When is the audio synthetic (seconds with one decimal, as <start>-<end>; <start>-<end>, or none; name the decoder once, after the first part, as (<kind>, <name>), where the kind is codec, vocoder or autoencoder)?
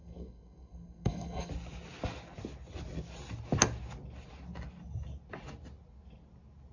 0.0-1.5 (codec, SNAC)